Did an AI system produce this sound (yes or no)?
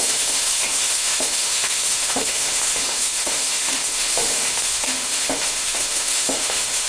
yes